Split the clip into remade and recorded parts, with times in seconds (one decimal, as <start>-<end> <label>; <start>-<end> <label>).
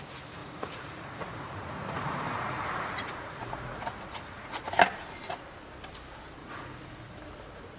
0.0-0.4 recorded; 0.4-4.6 remade; 4.6-6.4 recorded; 6.4-7.2 remade; 7.2-7.8 recorded